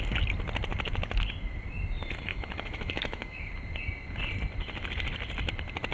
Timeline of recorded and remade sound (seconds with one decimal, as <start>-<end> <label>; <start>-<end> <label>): 0.0-2.3 recorded; 2.3-3.5 remade; 3.5-5.9 recorded